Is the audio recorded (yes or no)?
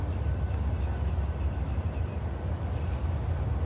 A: yes